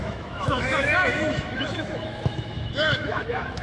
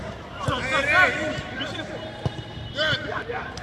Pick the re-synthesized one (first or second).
first